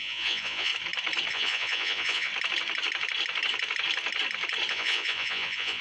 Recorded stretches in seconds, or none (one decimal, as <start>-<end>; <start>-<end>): 0.7-1.3; 2.3-4.7